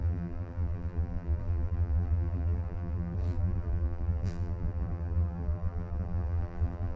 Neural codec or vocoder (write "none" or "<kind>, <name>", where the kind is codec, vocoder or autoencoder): vocoder, BigVGAN v2